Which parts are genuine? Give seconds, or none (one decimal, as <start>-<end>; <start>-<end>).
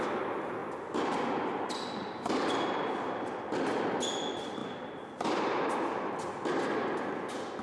0.0-7.6